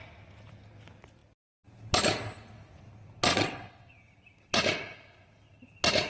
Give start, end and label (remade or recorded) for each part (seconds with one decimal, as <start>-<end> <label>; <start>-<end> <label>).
0.0-3.3 recorded; 3.3-4.1 remade; 4.1-6.1 recorded